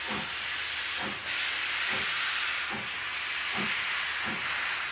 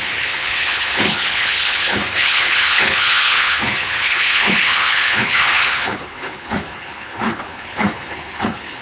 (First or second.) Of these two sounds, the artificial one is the second